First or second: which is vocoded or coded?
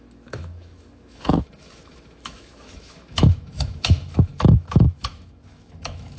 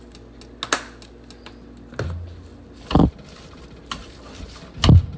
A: first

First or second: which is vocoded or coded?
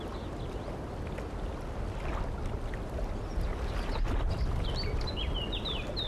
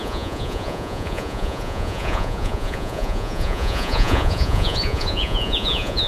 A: second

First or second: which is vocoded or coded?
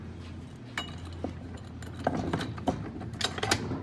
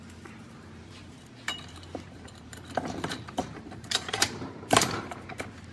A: second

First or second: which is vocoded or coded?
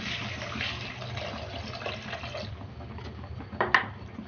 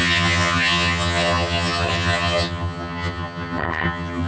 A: second